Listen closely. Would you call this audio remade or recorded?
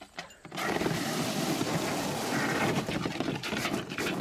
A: recorded